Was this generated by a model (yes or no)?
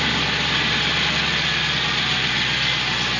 no